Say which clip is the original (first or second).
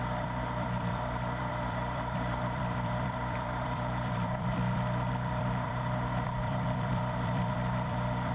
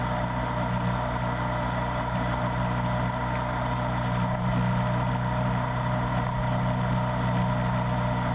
second